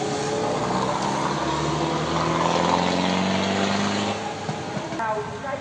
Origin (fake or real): real